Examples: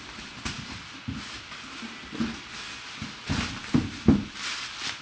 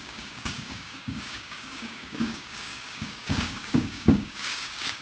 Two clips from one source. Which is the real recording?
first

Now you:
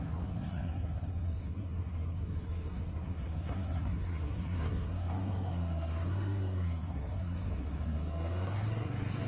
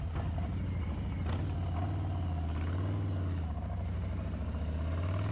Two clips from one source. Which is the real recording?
second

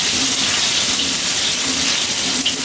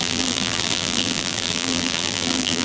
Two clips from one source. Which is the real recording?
first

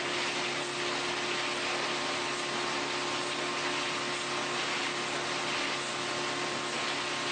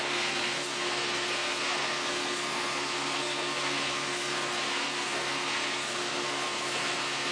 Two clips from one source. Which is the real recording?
first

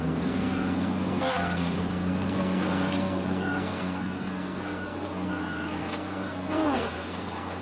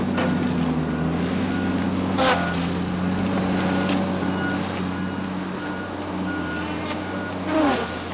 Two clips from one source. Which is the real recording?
second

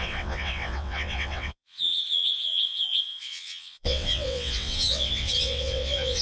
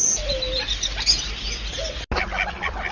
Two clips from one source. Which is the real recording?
second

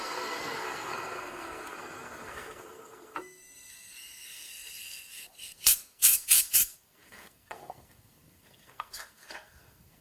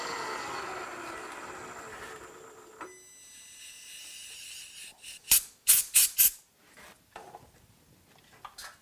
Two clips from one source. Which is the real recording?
second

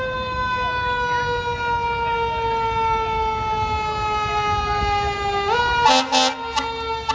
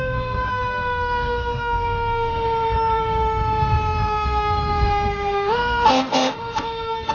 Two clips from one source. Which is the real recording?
first